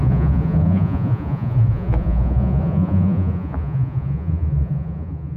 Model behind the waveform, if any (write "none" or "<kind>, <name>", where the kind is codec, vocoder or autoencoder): vocoder, Vocos